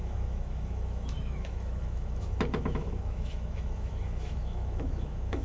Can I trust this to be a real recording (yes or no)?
no